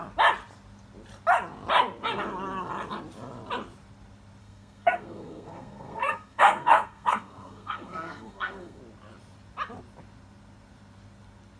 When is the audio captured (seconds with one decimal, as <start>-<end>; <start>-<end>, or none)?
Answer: 0.0-4.4; 8.8-11.6